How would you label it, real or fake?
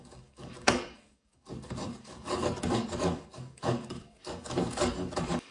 fake